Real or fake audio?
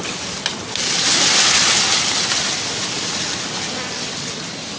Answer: real